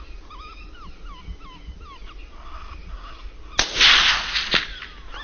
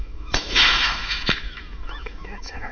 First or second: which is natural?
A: first